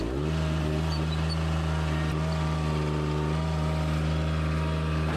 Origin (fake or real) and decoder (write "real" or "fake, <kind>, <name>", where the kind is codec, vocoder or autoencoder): real